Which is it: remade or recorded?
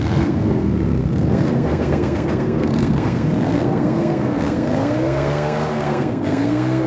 remade